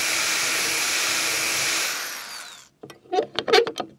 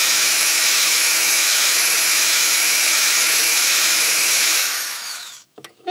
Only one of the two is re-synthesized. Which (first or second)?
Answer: second